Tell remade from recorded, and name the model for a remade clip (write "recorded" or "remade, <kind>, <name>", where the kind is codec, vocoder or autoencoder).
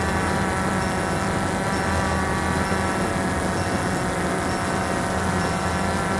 recorded